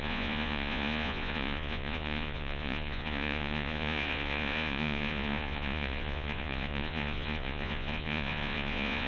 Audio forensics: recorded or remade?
remade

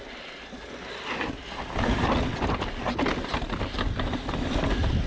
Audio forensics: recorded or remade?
recorded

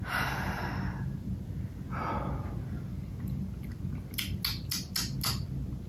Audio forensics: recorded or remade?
recorded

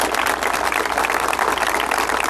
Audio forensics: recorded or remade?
recorded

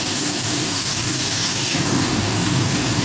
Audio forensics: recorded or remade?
remade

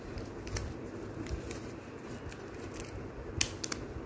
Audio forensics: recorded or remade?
recorded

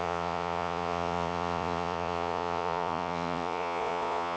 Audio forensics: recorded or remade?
remade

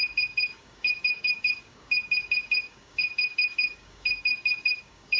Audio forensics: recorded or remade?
remade